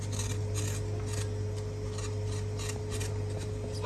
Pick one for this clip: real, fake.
real